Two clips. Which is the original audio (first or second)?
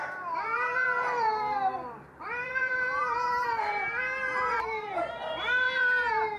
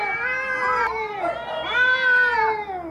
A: second